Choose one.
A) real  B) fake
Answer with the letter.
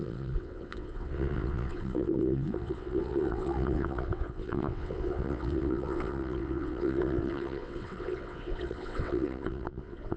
B